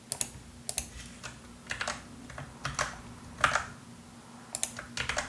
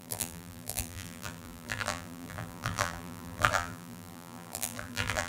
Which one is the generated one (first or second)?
second